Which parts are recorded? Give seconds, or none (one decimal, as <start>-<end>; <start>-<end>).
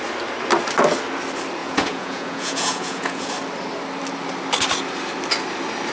0.0-1.6; 3.3-5.9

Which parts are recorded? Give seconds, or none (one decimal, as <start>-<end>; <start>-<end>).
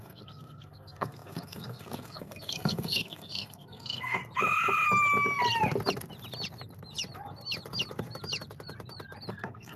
4.2-9.3